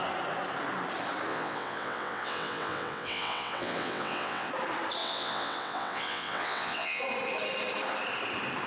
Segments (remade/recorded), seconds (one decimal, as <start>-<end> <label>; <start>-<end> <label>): 0.0-1.3 recorded; 1.3-4.5 remade; 4.5-5.0 recorded; 5.0-7.0 remade; 7.0-8.7 recorded